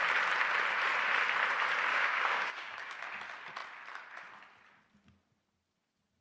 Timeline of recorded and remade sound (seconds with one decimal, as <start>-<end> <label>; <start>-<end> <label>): 0.0-1.9 recorded; 1.9-3.0 remade; 3.0-6.2 recorded